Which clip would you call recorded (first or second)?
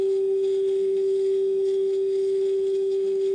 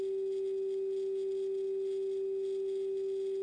second